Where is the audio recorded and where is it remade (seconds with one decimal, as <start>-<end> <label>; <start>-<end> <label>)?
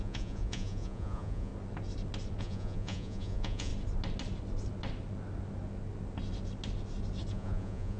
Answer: 0.0-1.5 remade; 1.5-2.4 recorded; 2.4-3.7 remade; 3.7-7.3 recorded; 7.3-8.0 remade